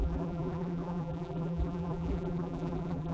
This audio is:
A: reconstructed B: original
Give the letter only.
A